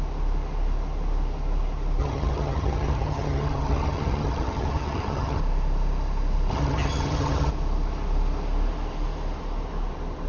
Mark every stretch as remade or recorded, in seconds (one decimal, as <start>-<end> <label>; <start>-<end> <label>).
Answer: 0.0-2.0 recorded; 2.0-5.4 remade; 5.4-6.5 recorded; 6.5-7.5 remade; 7.5-10.3 recorded